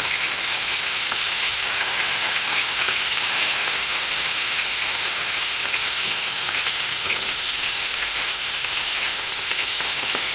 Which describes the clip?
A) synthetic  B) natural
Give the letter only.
A